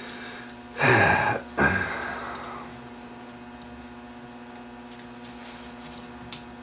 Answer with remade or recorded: recorded